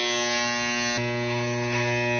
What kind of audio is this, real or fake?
real